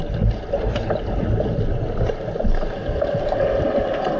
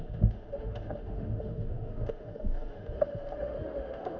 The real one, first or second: first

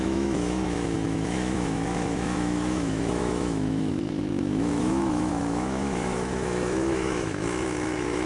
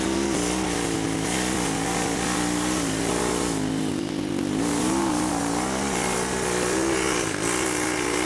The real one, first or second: second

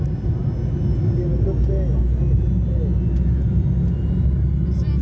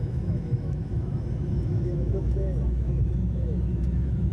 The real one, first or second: first